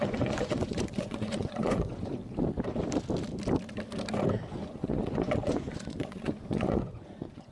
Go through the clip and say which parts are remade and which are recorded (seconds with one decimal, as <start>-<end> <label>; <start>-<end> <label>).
0.0-2.2 remade; 2.2-4.5 recorded; 4.5-7.5 remade